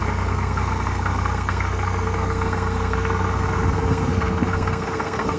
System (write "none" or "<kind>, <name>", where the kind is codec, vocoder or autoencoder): codec, SNAC